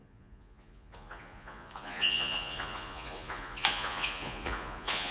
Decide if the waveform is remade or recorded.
remade